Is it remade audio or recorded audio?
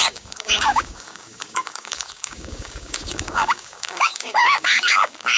remade